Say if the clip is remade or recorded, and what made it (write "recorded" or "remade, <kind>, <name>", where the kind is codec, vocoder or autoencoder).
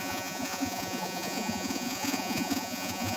remade, vocoder, Vocos